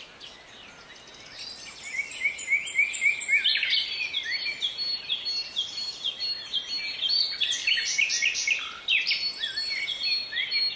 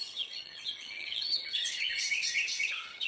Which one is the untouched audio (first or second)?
first